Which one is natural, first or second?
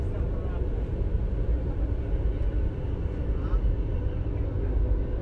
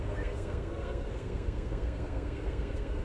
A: first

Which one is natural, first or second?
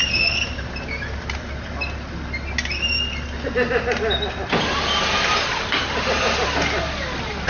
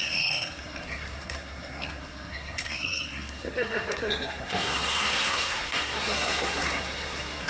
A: first